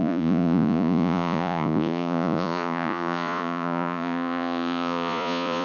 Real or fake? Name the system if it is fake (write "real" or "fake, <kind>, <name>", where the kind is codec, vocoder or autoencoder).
fake, vocoder, Vocos